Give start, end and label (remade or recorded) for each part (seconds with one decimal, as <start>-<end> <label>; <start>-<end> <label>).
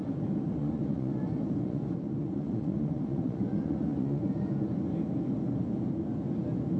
0.0-0.6 recorded; 0.6-4.7 remade; 4.7-6.8 recorded